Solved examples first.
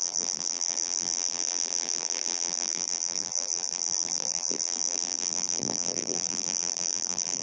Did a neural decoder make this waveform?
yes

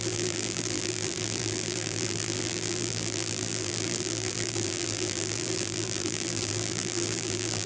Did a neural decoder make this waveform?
yes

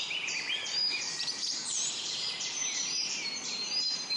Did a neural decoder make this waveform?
yes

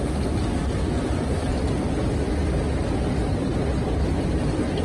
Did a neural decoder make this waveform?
no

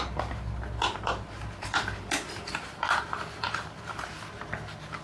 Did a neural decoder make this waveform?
no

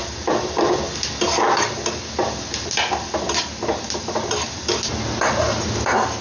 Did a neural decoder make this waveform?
no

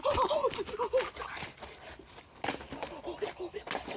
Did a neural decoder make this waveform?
no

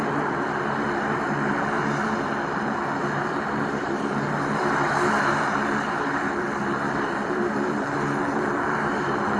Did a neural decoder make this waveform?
yes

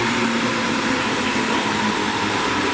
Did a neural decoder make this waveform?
yes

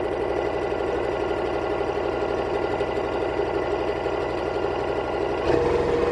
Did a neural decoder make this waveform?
no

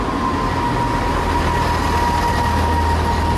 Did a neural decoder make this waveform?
no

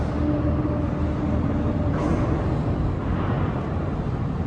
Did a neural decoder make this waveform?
no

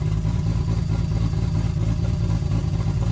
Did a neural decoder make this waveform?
no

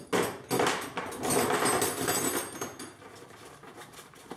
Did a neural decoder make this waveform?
no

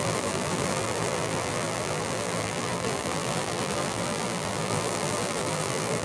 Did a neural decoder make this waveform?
yes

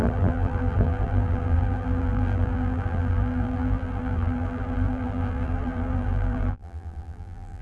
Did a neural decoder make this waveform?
yes